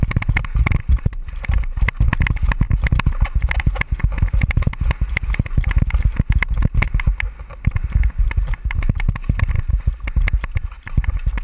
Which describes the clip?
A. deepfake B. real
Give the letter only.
B